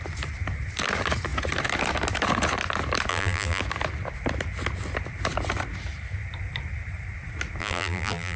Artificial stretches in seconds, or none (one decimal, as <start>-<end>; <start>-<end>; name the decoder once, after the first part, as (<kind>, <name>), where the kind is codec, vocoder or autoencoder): 3.1-3.6 (vocoder, BigVGAN v2); 7.6-8.4